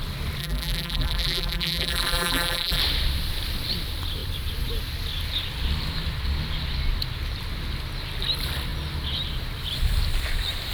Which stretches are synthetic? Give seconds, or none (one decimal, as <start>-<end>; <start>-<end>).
0.4-2.8